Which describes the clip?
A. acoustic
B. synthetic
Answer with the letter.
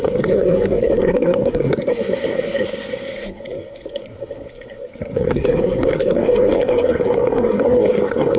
B